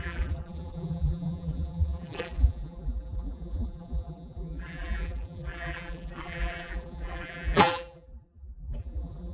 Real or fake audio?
fake